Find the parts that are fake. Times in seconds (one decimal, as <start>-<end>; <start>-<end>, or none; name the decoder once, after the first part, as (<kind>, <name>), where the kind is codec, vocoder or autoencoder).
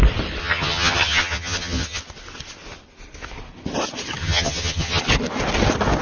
0.4-2.0 (vocoder, HiFi-GAN); 4.2-5.0